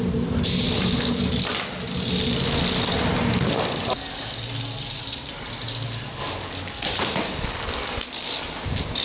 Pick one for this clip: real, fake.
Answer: fake